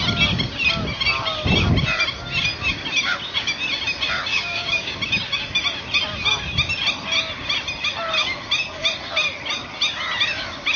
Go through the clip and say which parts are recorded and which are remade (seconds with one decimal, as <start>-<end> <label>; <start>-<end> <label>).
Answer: 0.0-4.3 recorded; 4.3-4.9 remade; 4.9-10.8 recorded